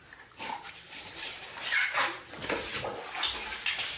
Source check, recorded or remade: recorded